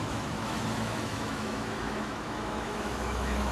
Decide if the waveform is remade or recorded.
remade